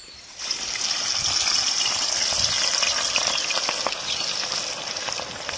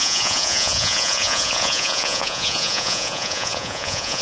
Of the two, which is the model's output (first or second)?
second